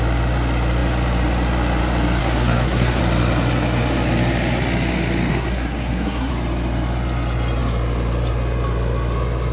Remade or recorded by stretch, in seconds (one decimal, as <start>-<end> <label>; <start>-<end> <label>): 0.0-2.2 recorded; 2.2-3.0 remade; 3.0-5.3 recorded; 5.3-6.3 remade; 6.3-9.5 recorded